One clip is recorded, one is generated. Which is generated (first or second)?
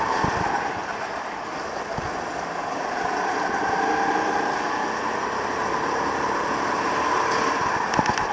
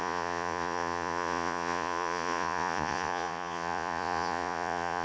second